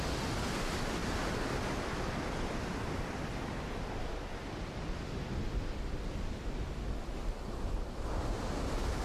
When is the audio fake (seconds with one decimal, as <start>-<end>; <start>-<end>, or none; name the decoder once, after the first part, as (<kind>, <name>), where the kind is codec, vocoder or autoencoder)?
none